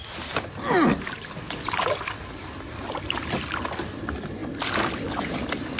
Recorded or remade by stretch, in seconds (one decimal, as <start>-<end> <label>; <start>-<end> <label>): 0.0-5.8 recorded